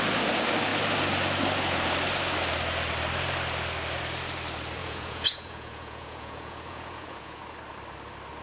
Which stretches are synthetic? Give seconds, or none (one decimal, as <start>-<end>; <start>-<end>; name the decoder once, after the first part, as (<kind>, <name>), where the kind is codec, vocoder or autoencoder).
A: 4.8-7.4 (vocoder, Vocos)